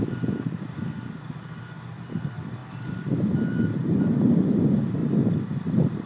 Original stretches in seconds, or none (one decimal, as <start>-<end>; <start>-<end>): 0.0-2.6; 4.2-5.0